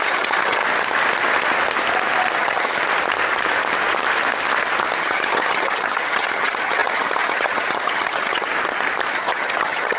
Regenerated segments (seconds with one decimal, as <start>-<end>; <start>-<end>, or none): 0.0-0.6; 2.4-2.8; 5.0-8.5; 9.1-10.0